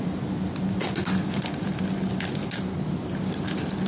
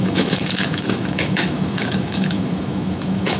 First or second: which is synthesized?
second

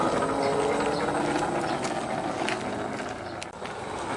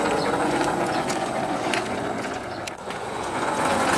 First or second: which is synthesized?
second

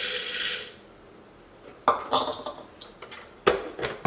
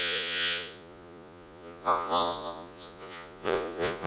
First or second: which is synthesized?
second